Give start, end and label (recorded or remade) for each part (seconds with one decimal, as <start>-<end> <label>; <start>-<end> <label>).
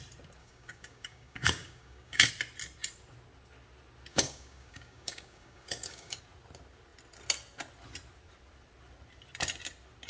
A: 0.0-0.4 recorded; 0.4-2.3 remade; 2.3-4.1 recorded; 4.1-6.2 remade; 6.2-10.1 recorded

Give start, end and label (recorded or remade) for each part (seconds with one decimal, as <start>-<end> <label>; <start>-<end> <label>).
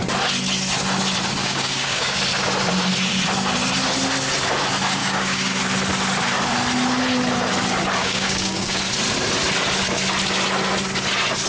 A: 0.0-1.4 recorded; 1.4-2.2 remade; 2.2-5.0 recorded; 5.0-5.6 remade; 5.6-8.0 recorded; 8.0-8.8 remade; 8.8-11.5 recorded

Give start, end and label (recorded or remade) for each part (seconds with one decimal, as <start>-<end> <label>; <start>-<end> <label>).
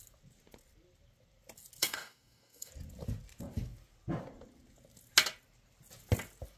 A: 0.0-1.8 recorded; 1.8-2.7 remade; 2.7-6.6 recorded